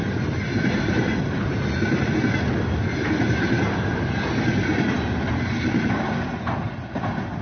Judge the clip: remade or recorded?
recorded